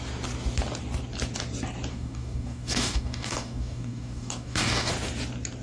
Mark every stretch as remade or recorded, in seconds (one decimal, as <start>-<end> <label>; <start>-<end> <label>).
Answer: 0.0-1.9 recorded; 1.9-4.9 remade; 4.9-5.6 recorded